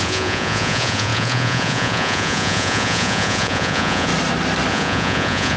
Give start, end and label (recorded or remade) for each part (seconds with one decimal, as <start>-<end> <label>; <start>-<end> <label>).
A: 0.0-4.1 remade; 4.1-4.7 recorded; 4.7-5.6 remade